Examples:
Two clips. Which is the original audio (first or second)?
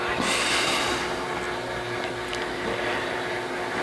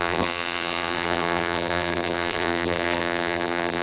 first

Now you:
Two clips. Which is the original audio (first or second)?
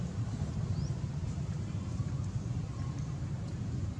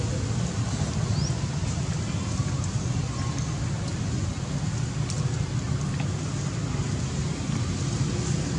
second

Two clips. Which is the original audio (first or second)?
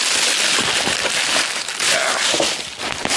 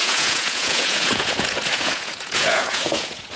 first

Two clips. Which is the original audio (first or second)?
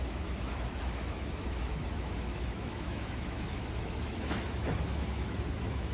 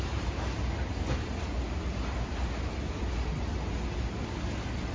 second